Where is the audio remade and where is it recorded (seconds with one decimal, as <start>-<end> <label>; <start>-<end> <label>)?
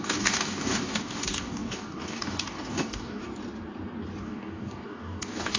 0.0-3.3 remade; 3.3-4.2 recorded; 4.2-5.6 remade